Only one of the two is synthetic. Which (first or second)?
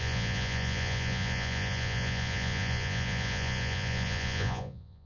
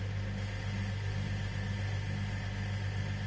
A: first